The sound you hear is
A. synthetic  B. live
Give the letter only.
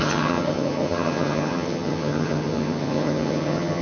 A